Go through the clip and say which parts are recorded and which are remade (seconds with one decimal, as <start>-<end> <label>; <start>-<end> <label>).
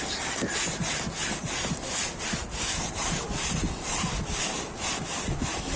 0.0-5.8 recorded